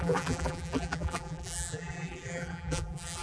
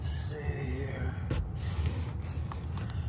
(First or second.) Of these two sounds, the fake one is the first